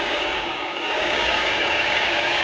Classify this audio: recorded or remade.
remade